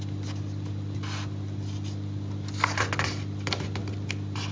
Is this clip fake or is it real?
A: real